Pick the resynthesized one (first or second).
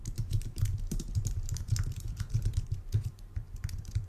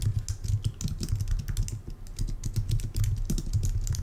first